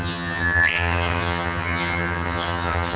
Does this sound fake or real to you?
fake